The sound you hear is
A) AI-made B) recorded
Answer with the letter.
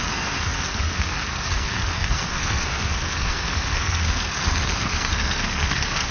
A